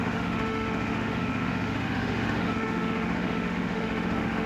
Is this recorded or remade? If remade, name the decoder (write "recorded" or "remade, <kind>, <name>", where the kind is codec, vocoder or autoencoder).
remade, autoencoder, DAC-VAE